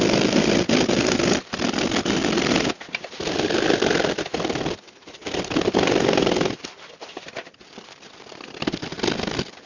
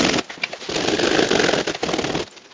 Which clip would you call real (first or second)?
second